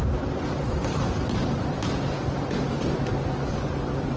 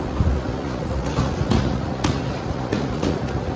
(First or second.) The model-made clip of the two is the second